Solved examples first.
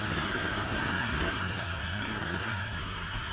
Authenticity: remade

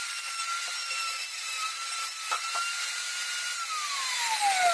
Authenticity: recorded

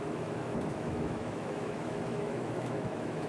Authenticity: remade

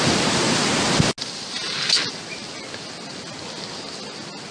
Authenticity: recorded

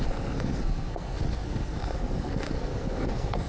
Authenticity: remade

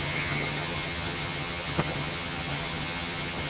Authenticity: remade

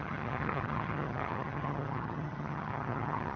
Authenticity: remade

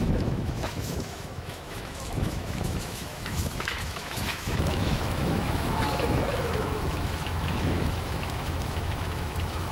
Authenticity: remade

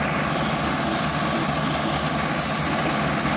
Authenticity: recorded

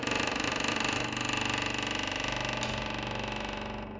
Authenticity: recorded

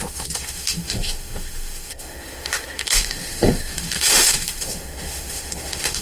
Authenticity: remade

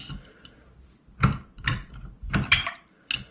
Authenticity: recorded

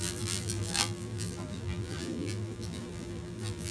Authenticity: remade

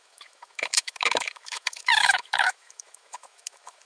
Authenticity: remade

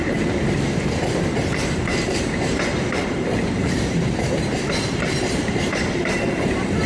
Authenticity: remade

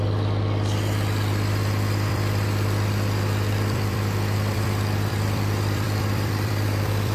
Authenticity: remade